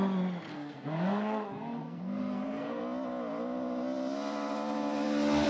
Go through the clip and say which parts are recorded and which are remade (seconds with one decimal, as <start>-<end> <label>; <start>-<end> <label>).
0.0-0.5 recorded; 0.5-2.8 remade; 2.8-5.5 recorded